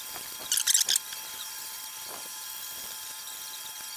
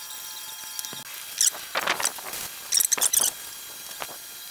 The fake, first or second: first